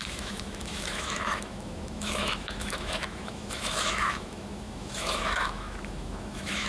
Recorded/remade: remade